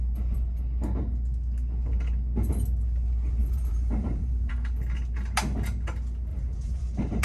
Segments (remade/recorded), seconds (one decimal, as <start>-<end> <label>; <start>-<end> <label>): 0.0-3.4 recorded; 3.4-4.5 remade; 4.5-6.3 recorded; 6.3-7.2 remade